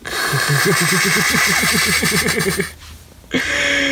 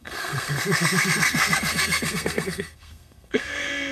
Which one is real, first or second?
first